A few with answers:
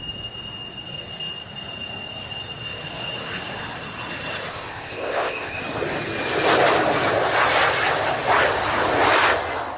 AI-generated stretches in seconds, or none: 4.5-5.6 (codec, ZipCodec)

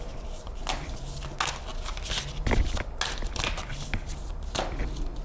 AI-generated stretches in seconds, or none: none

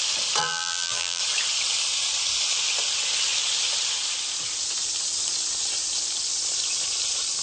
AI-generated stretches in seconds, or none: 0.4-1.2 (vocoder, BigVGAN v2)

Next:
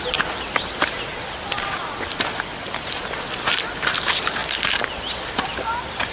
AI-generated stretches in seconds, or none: none

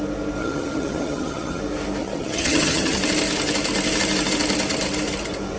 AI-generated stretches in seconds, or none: 0.4-1.6 (vocoder, HiFi-GAN); 2.0-3.0

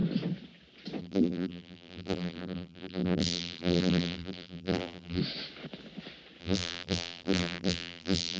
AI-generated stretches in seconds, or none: 1.0-5.2 (vocoder, BigVGAN v2); 6.4-8.4

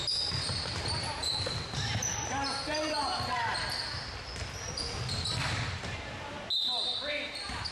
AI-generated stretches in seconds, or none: none